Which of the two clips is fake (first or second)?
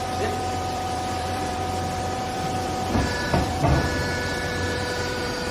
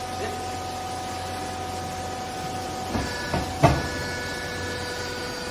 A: first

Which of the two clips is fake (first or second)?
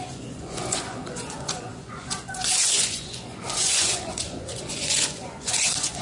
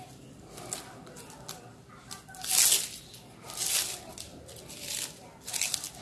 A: first